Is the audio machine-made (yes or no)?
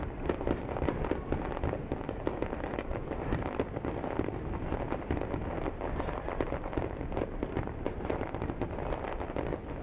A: no